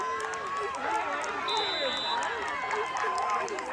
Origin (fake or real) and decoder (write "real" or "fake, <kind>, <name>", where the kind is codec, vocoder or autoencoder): real